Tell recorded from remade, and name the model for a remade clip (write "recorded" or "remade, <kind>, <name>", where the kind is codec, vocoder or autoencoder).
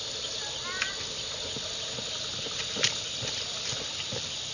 recorded